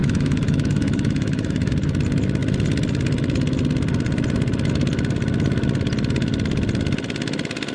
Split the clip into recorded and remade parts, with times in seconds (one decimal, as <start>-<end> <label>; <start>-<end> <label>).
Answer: 0.0-1.7 remade; 1.7-7.7 recorded